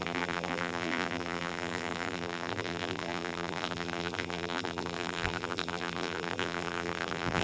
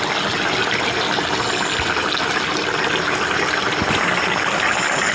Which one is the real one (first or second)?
second